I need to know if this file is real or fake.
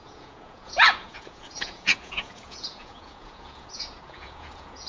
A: fake